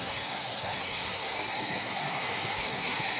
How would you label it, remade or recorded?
remade